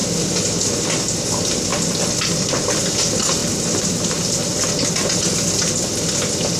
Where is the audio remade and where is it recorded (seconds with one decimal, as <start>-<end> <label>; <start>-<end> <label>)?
0.0-6.6 recorded